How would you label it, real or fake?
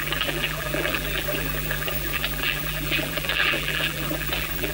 fake